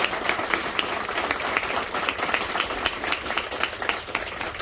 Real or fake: real